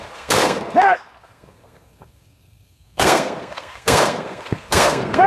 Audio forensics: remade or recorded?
remade